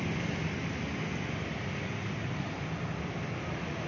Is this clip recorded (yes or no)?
yes